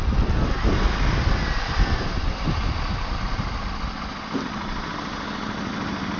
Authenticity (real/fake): real